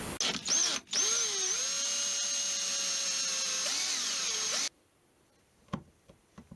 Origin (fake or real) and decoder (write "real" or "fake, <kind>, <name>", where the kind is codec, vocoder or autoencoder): real